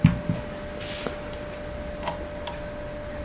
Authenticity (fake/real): real